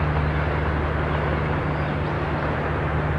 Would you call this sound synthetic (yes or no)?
no